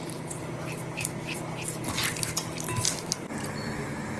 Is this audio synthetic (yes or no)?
no